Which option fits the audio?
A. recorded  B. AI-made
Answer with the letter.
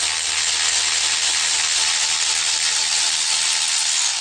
A